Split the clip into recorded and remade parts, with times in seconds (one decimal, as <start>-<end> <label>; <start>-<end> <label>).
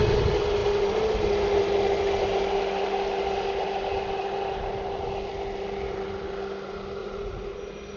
0.0-7.0 recorded; 7.0-7.5 remade; 7.5-8.0 recorded